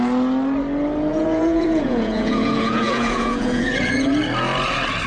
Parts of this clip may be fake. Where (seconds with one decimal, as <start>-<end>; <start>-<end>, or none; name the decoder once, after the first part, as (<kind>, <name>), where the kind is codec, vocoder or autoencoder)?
1.1-4.2 (vocoder, Vocos)